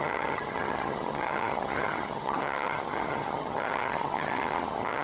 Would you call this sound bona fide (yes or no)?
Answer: no